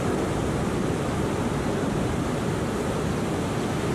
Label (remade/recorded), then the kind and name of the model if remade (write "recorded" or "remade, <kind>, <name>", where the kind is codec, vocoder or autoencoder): recorded